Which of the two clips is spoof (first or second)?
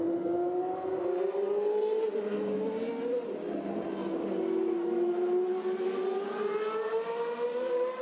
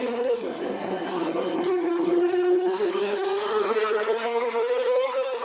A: second